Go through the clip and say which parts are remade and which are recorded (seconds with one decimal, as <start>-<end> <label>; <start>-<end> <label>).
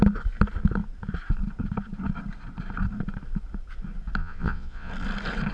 0.0-4.2 recorded; 4.2-4.9 remade; 4.9-5.5 recorded